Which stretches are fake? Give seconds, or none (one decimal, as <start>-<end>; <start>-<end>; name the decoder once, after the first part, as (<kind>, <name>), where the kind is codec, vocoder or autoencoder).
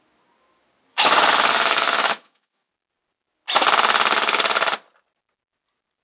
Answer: 0.9-2.7 (autoencoder, DAC-VAE)